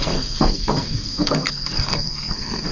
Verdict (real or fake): fake